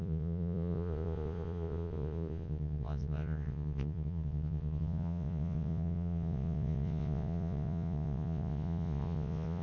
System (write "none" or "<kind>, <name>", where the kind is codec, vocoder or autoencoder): vocoder, Vocos